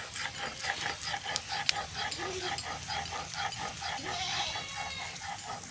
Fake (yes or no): no